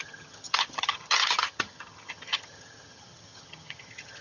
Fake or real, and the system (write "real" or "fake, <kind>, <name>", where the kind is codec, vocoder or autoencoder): fake, vocoder, HiFi-GAN